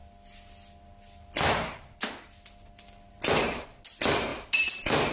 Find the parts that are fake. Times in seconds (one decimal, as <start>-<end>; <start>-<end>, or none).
none